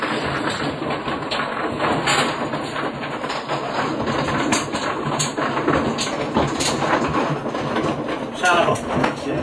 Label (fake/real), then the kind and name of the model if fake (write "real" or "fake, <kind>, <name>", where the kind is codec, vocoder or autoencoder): real